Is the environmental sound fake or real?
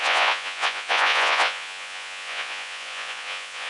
fake